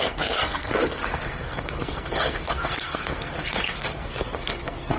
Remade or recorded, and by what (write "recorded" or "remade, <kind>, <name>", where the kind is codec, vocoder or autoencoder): remade, codec, SNAC